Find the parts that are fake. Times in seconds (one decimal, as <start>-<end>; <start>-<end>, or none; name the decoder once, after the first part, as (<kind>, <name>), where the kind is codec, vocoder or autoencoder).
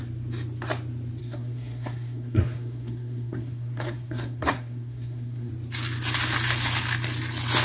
1.2-5.5 (codec, SNAC)